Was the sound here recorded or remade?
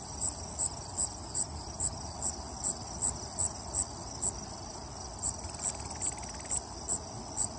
recorded